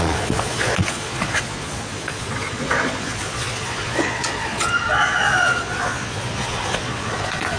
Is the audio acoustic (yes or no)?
no